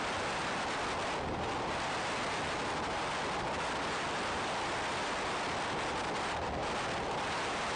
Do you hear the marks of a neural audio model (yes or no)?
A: no